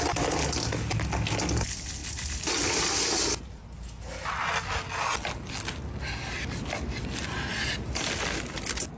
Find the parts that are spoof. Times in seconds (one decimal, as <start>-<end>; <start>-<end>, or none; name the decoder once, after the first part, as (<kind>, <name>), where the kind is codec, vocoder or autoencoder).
none